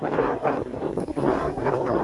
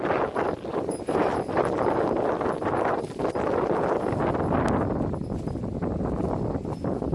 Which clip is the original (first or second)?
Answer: second